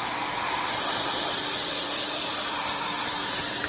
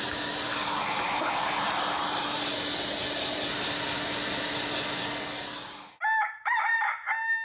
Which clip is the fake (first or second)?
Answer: first